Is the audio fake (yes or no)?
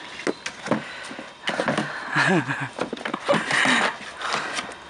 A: no